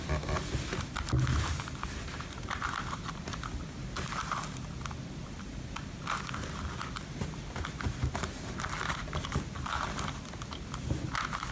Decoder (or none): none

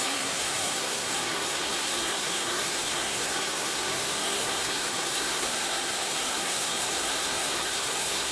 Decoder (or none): codec, SNAC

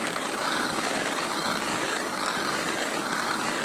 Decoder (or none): codec, DAC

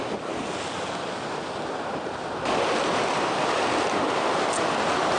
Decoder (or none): none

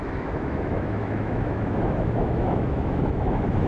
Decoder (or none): autoencoder, DAC-VAE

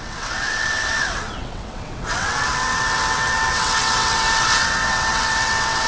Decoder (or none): vocoder, WaveNeXt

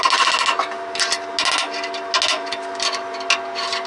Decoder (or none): none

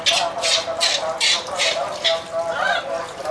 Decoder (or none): none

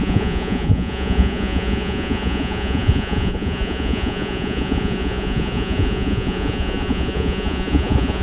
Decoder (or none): vocoder, Vocos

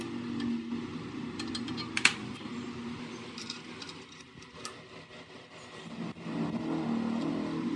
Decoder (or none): none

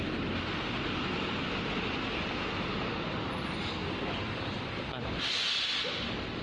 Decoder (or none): none